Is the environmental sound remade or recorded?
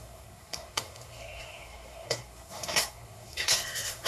remade